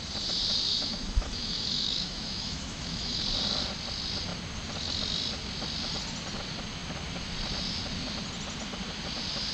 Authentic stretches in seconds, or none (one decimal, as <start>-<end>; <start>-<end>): 0.0-0.7; 3.2-9.5